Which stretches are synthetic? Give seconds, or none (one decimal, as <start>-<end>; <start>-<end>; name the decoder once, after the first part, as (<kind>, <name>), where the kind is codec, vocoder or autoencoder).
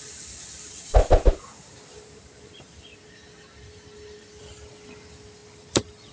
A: none